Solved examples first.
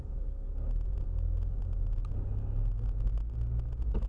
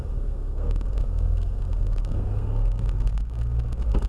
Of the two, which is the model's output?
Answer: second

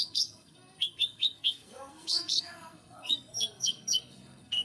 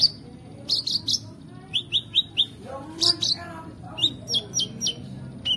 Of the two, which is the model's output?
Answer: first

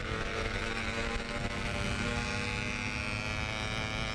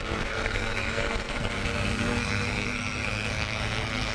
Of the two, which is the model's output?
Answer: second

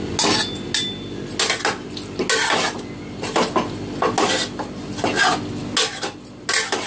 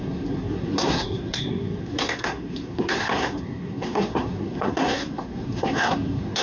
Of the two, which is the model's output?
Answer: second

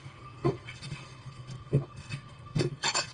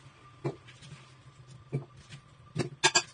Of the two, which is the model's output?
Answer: first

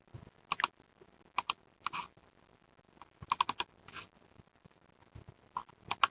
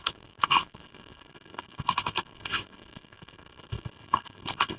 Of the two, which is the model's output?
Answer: second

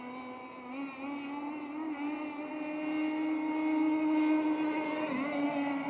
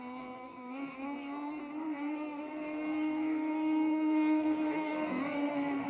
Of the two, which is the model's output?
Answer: second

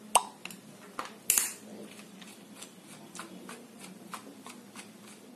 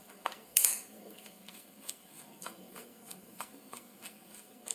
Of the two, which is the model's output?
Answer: second